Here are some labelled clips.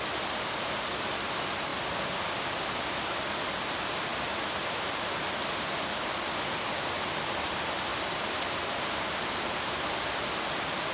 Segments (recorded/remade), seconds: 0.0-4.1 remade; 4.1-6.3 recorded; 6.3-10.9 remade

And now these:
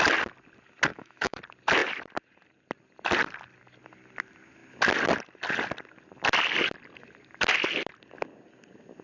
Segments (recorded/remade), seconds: 0.0-0.9 recorded; 0.9-1.4 remade; 1.4-9.0 recorded

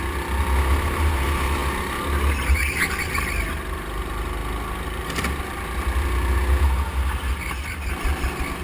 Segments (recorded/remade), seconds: 0.0-8.6 recorded

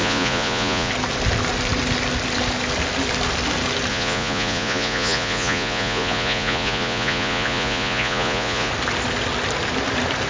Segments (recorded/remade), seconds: 0.0-0.9 remade; 0.9-3.9 recorded; 3.9-8.7 remade; 8.7-10.3 recorded

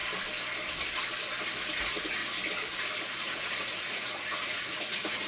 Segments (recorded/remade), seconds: 0.0-1.6 recorded; 1.6-2.2 remade; 2.2-3.2 recorded; 3.2-5.3 remade

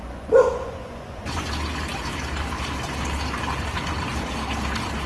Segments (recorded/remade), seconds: 0.0-1.5 remade; 1.5-5.1 recorded

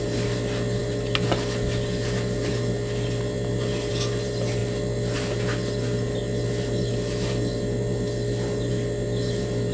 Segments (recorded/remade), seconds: 0.0-9.7 recorded